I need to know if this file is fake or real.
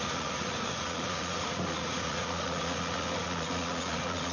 fake